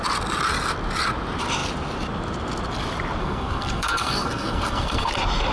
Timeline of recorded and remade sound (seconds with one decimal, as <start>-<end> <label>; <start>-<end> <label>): 0.0-3.2 recorded; 3.2-5.1 remade; 5.1-5.5 recorded